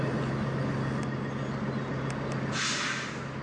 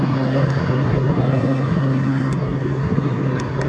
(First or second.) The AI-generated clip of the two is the second